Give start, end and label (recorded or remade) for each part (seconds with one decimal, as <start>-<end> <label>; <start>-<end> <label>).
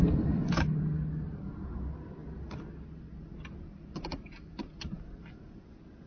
0.0-6.1 recorded